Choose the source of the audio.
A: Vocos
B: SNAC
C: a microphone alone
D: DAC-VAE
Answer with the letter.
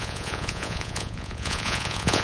A